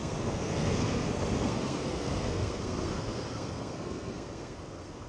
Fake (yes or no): yes